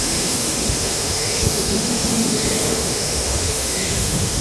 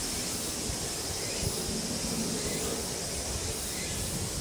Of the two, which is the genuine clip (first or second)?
second